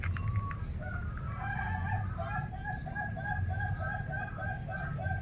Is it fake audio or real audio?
real